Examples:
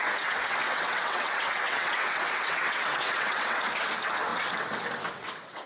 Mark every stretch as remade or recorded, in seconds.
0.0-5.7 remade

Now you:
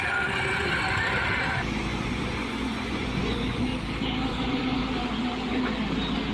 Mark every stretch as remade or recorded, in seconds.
0.0-0.7 remade; 0.7-1.8 recorded; 1.8-3.7 remade; 3.7-4.3 recorded; 4.3-4.8 remade; 4.8-6.3 recorded

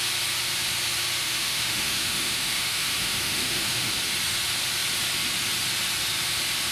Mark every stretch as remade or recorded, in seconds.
0.0-1.2 recorded; 1.2-3.9 remade; 3.9-6.7 recorded

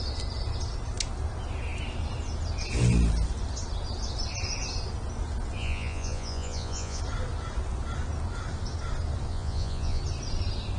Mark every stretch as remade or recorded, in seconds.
0.0-5.6 recorded; 5.6-7.0 remade; 7.0-9.3 recorded; 9.3-10.0 remade; 10.0-10.8 recorded

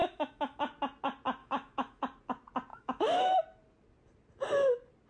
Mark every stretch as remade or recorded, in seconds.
0.0-0.6 remade; 0.6-1.4 recorded; 1.4-2.0 remade; 2.0-2.7 recorded; 2.7-3.4 remade; 3.4-5.1 recorded

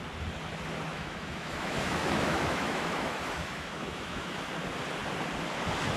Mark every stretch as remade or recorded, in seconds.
0.0-0.9 recorded; 0.9-4.5 remade; 4.5-6.0 recorded

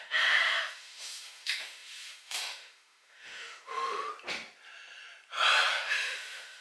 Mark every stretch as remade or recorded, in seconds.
0.0-4.1 remade; 4.1-5.7 recorded; 5.7-6.6 remade